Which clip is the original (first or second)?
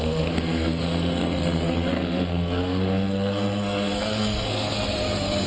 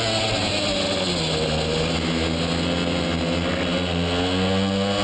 second